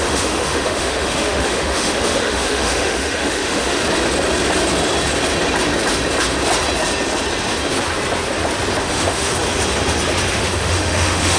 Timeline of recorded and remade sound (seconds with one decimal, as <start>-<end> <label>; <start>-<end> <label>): 0.0-3.8 remade; 3.8-8.8 recorded; 8.8-9.3 remade; 9.3-10.3 recorded; 10.3-11.4 remade